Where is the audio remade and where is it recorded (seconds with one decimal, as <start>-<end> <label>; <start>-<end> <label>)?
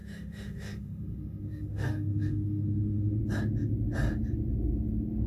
0.0-3.2 remade; 3.2-5.3 recorded